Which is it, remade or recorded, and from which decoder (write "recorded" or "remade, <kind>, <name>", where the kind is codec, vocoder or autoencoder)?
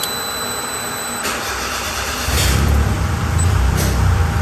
remade, vocoder, BigVGAN v2